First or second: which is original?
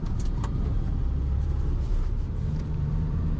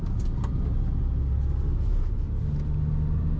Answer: second